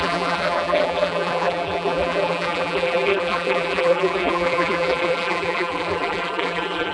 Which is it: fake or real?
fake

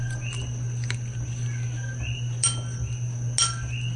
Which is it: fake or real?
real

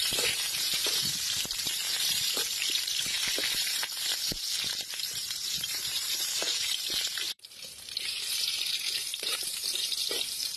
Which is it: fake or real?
fake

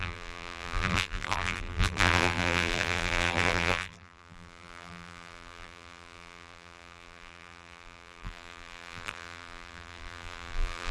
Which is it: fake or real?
fake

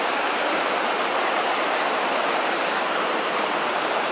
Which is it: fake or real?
fake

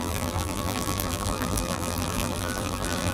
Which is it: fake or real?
fake